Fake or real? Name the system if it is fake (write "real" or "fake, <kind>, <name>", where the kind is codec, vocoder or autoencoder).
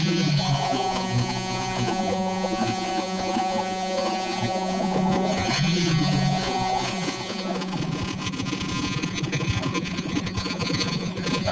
fake, vocoder, Vocos